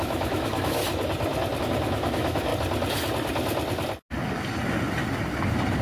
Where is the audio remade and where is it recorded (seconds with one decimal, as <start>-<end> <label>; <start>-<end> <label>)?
0.0-0.8 remade; 0.8-1.6 recorded; 1.6-2.5 remade; 2.5-5.8 recorded